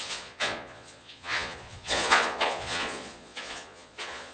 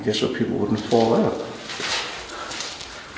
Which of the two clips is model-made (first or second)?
first